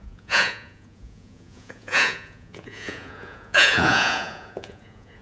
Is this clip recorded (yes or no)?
no